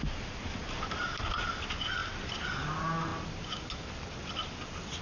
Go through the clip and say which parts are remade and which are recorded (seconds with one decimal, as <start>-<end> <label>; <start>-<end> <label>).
0.0-5.0 recorded